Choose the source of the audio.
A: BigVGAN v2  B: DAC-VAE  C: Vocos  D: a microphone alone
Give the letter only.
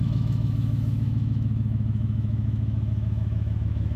B